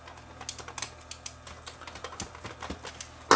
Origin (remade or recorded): recorded